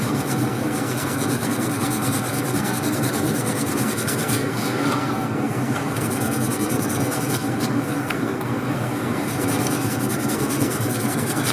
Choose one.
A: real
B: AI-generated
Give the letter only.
B